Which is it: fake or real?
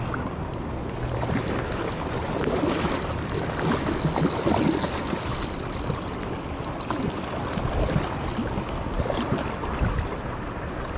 real